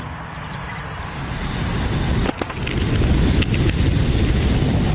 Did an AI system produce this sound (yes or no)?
no